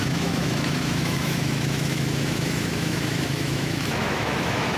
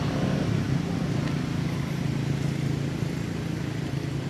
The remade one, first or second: first